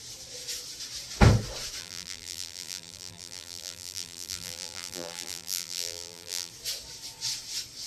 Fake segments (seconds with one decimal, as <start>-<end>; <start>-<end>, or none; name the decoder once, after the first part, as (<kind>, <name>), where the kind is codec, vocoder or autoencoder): 1.8-6.5 (vocoder, BigVGAN v2)

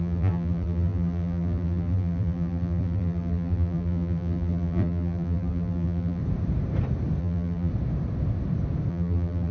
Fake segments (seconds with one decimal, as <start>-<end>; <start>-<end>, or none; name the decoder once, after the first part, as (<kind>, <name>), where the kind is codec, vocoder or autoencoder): 0.0-6.2 (vocoder, BigVGAN v2); 7.2-7.7; 8.9-9.5

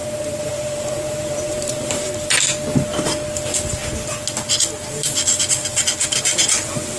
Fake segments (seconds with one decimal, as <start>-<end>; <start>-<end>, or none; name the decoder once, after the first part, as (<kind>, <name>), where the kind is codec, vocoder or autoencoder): 0.0-2.1 (vocoder, BigVGAN v2)